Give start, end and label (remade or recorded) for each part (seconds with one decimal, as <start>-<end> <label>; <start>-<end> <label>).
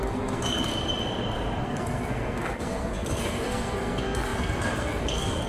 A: 0.0-0.7 remade; 0.7-1.6 recorded; 1.6-5.5 remade